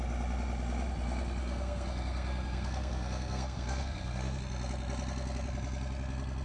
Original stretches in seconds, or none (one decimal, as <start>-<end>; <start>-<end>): 0.0-1.4; 4.4-6.4